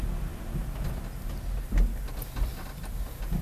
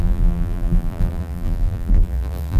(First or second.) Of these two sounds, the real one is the first